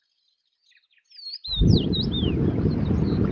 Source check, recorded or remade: recorded